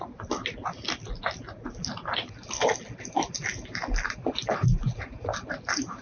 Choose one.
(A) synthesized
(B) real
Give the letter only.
B